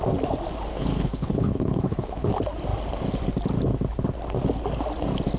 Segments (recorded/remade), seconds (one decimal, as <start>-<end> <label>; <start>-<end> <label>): 0.0-0.7 recorded; 0.7-2.3 remade; 2.3-5.4 recorded

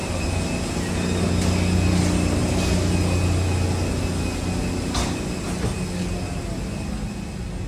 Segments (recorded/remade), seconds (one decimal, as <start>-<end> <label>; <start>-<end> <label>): 0.0-7.7 recorded

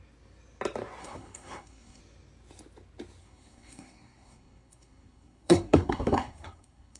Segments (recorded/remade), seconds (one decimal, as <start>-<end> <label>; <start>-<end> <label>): 0.0-1.0 recorded; 1.0-2.0 remade; 2.0-3.2 recorded; 3.2-7.0 remade

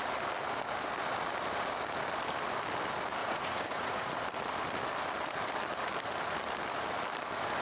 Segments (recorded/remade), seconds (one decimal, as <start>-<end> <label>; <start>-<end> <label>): 0.0-3.2 recorded; 3.2-4.1 remade; 4.1-7.6 recorded

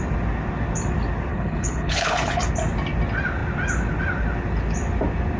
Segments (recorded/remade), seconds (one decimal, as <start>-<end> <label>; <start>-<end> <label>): 0.0-1.3 recorded; 1.3-2.4 remade; 2.4-5.4 recorded

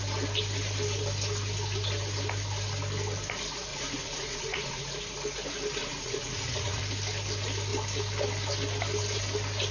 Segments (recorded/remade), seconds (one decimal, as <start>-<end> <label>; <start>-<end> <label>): 0.0-3.7 recorded; 3.7-4.8 remade; 4.8-5.8 recorded; 5.8-6.8 remade; 6.8-9.7 recorded

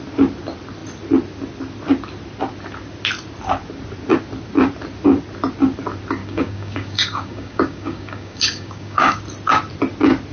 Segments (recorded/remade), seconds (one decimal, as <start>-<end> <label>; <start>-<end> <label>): 0.0-6.2 recorded; 6.2-9.2 remade; 9.2-10.3 recorded

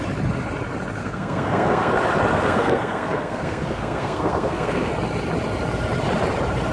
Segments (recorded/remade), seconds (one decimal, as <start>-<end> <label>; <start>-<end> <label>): 0.0-1.0 recorded; 1.0-1.9 remade; 1.9-2.3 recorded; 2.3-4.9 remade; 4.9-6.7 recorded